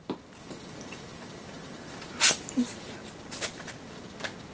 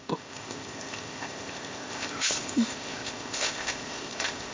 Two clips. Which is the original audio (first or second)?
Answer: first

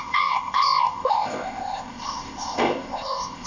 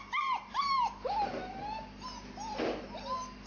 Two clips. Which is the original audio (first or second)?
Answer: second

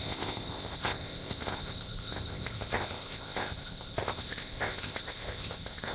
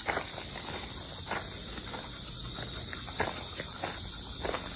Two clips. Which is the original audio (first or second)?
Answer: second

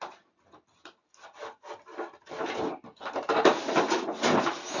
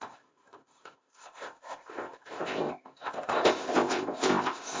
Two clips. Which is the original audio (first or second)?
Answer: first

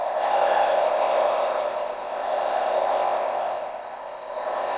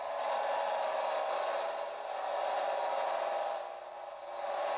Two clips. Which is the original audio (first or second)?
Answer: second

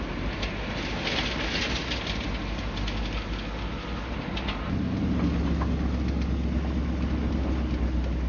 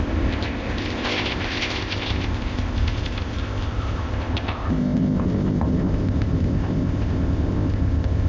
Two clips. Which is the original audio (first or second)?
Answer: first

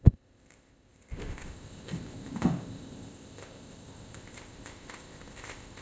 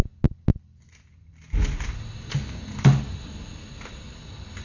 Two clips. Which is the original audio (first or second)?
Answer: second